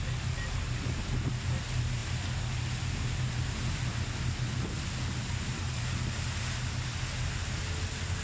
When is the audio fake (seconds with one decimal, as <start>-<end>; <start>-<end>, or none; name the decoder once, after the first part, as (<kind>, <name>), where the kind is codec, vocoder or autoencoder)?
none